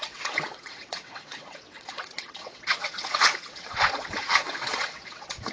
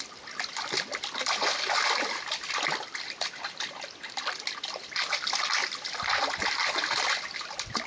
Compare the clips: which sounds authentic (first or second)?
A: second